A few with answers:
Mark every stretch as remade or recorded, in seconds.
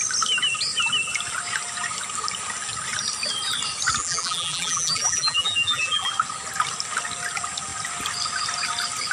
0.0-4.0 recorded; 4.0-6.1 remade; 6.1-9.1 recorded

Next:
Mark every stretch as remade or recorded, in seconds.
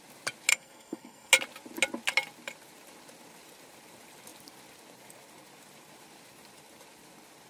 0.0-0.5 recorded; 0.5-1.3 remade; 1.3-7.5 recorded